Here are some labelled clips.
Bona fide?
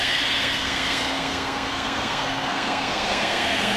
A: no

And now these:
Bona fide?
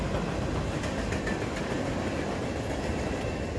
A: yes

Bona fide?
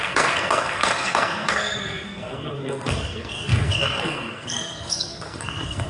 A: no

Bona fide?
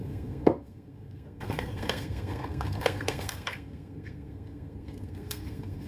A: no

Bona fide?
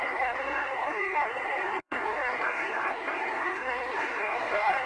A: no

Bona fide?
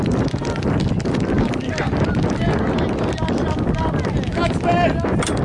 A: yes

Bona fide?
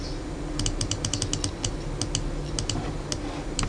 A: yes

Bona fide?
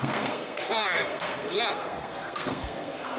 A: no